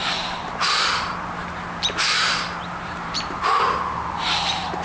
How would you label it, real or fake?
fake